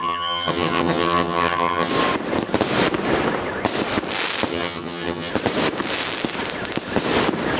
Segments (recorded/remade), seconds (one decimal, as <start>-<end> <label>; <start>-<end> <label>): 0.0-1.9 remade; 1.9-4.5 recorded; 4.5-5.3 remade; 5.3-7.6 recorded